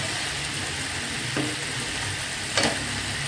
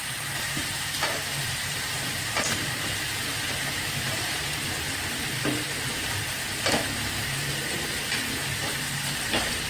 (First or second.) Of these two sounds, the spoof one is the second